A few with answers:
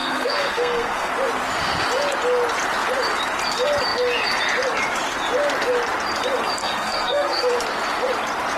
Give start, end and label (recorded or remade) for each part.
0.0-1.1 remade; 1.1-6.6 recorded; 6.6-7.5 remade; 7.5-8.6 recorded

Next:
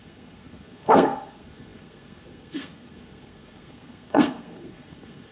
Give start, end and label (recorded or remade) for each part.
0.0-5.3 remade

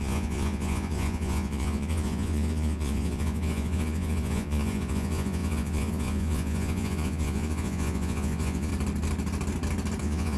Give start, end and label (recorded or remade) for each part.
0.0-8.7 remade; 8.7-10.0 recorded; 10.0-10.4 remade